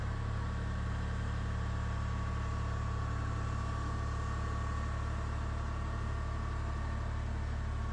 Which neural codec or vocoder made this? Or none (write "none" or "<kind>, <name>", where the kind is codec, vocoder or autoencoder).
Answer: none